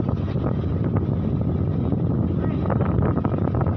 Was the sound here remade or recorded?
recorded